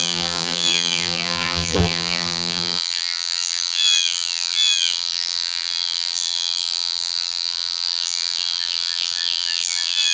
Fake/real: fake